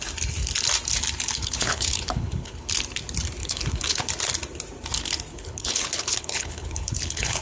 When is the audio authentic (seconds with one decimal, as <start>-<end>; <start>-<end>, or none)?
0.0-1.4; 2.7-3.4; 4.1-5.3